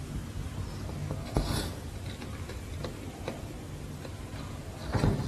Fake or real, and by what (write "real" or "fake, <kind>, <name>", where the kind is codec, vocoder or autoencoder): real